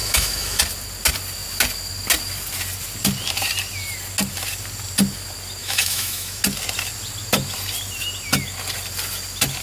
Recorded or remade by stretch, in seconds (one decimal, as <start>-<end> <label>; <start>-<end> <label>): 0.0-0.6 remade; 0.6-5.6 recorded; 5.6-6.4 remade; 6.4-9.6 recorded